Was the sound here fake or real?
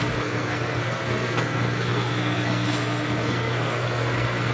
fake